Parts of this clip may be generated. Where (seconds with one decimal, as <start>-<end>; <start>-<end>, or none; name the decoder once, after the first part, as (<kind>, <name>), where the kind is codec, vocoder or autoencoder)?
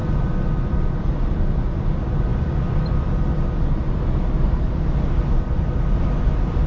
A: none